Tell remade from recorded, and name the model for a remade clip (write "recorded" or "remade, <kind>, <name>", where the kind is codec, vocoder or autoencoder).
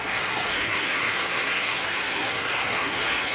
remade, codec, SNAC